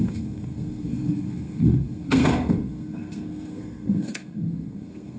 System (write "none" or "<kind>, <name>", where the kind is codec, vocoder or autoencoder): codec, SNAC